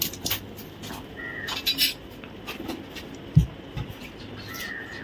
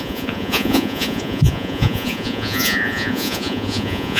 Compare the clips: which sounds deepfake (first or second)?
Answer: second